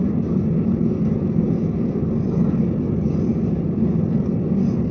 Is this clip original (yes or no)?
yes